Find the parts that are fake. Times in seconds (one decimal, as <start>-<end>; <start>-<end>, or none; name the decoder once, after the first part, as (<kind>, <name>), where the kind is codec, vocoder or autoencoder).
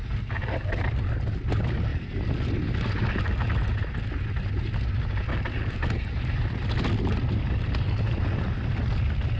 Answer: none